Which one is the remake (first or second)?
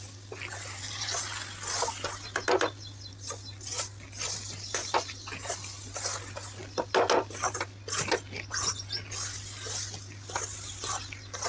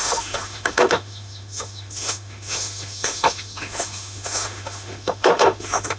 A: second